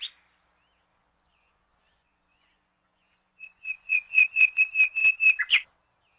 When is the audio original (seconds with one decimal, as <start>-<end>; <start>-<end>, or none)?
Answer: 0.0-0.9; 4.6-6.2